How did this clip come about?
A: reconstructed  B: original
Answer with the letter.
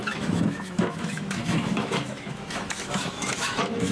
A